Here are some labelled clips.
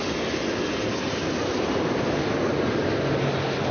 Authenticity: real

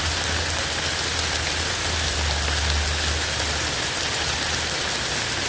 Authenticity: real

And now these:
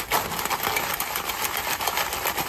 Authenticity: real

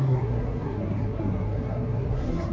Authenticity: fake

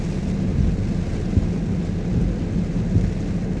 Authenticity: real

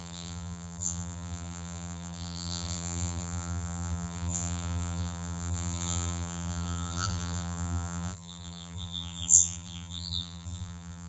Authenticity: fake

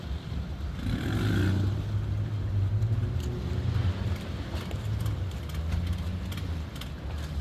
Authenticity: real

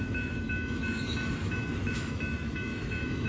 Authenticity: fake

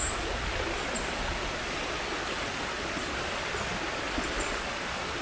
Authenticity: real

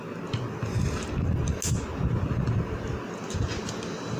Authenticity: real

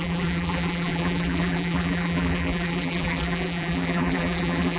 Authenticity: fake